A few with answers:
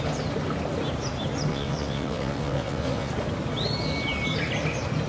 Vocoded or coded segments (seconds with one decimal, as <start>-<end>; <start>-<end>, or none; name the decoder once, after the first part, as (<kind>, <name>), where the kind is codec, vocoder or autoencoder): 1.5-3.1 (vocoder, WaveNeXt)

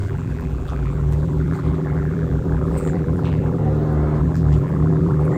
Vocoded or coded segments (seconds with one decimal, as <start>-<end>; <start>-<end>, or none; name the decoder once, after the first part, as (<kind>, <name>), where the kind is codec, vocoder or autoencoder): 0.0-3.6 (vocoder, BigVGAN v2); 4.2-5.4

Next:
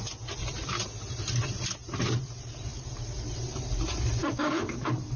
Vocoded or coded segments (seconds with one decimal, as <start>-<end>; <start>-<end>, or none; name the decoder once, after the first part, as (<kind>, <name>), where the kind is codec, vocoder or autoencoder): 4.2-4.8 (codec, DAC)